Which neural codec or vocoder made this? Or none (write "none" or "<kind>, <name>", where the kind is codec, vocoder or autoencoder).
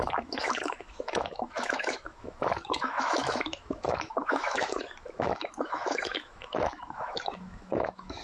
autoencoder, DAC-VAE